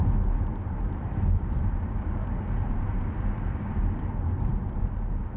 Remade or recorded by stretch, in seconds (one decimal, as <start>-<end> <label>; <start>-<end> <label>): 0.0-0.5 recorded; 0.5-3.7 remade; 3.7-5.4 recorded